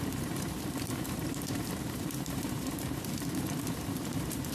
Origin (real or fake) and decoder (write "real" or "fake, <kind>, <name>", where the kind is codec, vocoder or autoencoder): fake, vocoder, BigVGAN v2